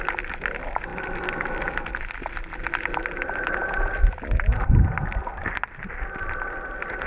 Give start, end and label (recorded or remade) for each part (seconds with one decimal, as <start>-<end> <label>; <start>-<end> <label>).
0.0-7.1 recorded